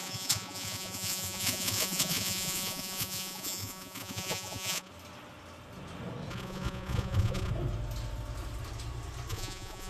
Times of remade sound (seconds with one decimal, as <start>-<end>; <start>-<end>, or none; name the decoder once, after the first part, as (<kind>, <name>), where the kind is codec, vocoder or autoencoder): 0.0-4.9 (vocoder, Vocos); 6.3-7.5; 9.3-9.9